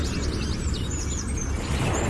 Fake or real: real